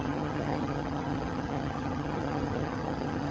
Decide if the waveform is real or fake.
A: fake